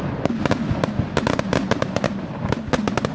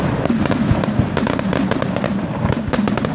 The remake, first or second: second